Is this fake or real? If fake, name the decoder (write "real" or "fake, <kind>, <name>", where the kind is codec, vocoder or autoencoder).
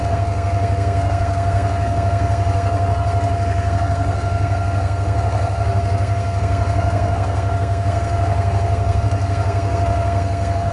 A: fake, codec, SNAC